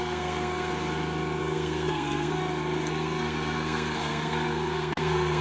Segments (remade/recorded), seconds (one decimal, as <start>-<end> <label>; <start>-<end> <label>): 0.0-0.7 remade; 0.7-1.4 recorded; 1.4-2.4 remade; 2.4-2.9 recorded; 2.9-5.4 remade

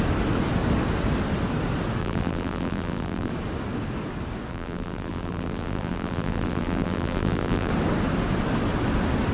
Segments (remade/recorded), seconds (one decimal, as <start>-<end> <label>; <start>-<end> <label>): 0.0-2.0 recorded; 2.0-3.3 remade; 3.3-4.5 recorded; 4.5-7.7 remade; 7.7-9.3 recorded

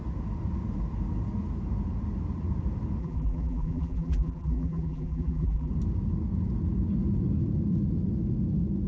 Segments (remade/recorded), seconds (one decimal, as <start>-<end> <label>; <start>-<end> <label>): 0.0-3.0 recorded; 3.0-5.7 remade; 5.7-8.9 recorded

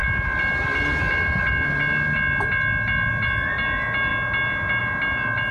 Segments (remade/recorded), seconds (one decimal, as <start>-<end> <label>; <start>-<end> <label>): 0.0-5.5 recorded

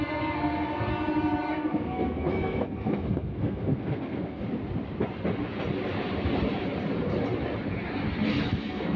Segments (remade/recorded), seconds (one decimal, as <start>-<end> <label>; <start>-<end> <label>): 0.0-0.9 remade; 0.9-1.5 recorded; 1.5-4.4 remade; 4.4-8.5 recorded; 8.5-9.0 remade

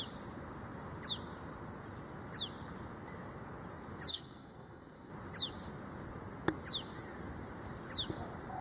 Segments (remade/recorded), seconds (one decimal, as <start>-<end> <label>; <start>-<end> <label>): 0.0-4.1 recorded; 4.1-5.1 remade; 5.1-8.6 recorded

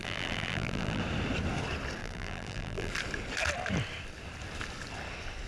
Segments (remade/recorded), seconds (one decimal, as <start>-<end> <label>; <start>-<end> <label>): 0.0-1.0 remade; 1.0-2.0 recorded; 2.0-2.9 remade; 2.9-5.5 recorded